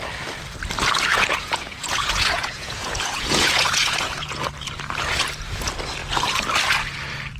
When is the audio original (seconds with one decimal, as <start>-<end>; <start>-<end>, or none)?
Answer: 0.0-1.1; 4.4-7.4